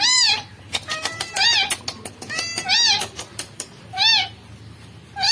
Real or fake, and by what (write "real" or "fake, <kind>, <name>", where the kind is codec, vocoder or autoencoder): real